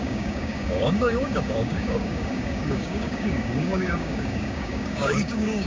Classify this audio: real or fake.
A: fake